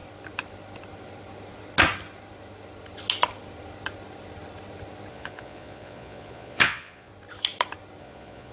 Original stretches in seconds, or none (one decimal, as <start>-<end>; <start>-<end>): 0.0-5.1; 7.1-8.0